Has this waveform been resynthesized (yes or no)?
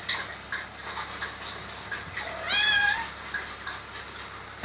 no